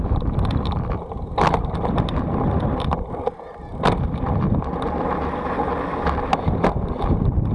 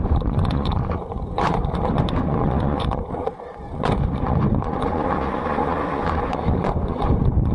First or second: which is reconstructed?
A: second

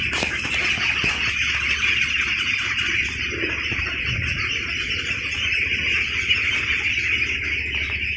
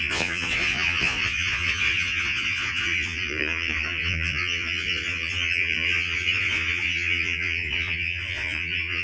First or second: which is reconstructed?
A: second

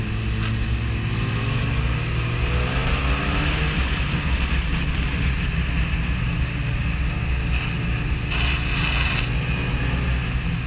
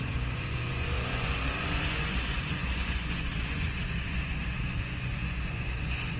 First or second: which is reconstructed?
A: second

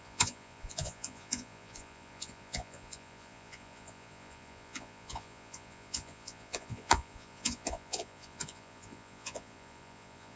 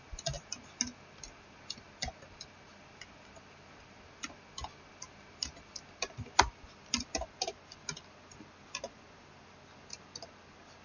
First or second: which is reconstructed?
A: first